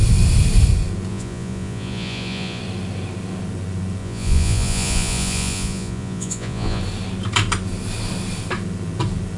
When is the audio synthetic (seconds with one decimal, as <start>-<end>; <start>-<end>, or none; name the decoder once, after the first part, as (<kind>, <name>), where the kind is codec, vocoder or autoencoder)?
1.1-2.6 (vocoder, Vocos); 4.0-6.8